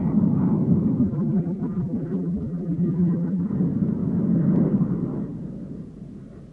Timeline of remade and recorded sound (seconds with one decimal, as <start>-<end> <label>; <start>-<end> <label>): 0.0-1.0 recorded; 1.0-3.5 remade; 3.5-6.5 recorded